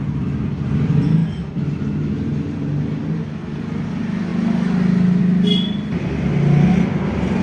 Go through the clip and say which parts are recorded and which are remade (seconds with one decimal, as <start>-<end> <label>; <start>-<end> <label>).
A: 0.0-7.4 recorded